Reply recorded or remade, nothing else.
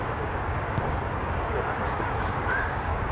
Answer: remade